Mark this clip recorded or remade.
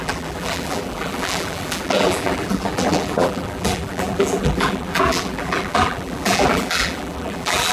remade